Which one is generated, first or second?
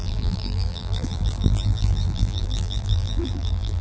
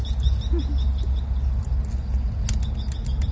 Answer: first